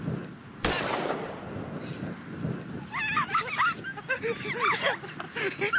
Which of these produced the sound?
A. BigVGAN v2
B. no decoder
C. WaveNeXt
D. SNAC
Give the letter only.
B